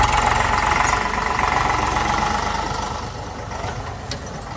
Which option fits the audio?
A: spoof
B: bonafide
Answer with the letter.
B